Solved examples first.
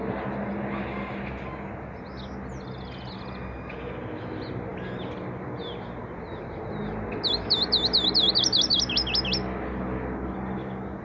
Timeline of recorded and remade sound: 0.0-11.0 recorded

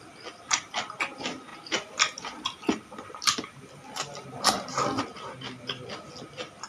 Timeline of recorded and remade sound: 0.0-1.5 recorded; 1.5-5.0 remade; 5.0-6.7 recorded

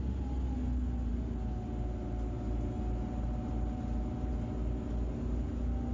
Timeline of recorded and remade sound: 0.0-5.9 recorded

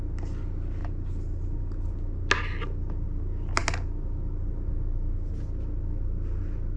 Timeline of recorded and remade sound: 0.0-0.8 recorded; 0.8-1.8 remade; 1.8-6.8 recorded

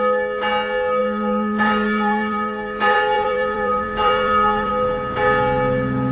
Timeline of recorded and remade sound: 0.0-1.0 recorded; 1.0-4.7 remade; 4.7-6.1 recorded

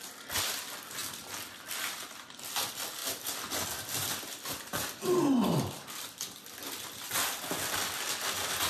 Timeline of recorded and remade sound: 0.0-1.0 recorded; 1.0-2.5 remade; 2.5-3.0 recorded; 3.0-7.1 remade; 7.1-8.7 recorded

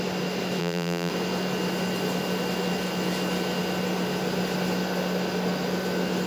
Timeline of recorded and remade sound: 0.0-0.6 recorded; 0.6-1.1 remade; 1.1-6.3 recorded